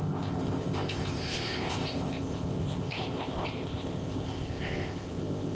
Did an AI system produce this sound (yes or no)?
yes